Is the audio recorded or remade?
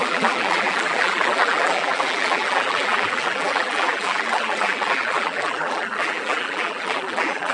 remade